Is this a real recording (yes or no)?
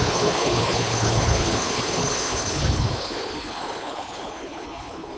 no